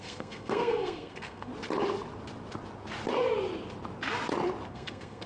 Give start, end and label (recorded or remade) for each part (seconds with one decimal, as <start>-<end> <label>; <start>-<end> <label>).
0.0-1.5 remade; 1.5-4.7 recorded; 4.7-5.3 remade